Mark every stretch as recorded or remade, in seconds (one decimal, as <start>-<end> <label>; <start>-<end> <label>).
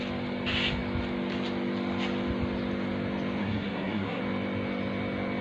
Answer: 0.0-3.4 recorded; 3.4-4.2 remade; 4.2-5.4 recorded